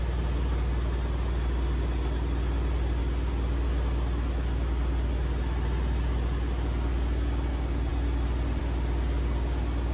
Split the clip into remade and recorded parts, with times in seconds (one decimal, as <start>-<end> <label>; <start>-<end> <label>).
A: 0.0-9.9 recorded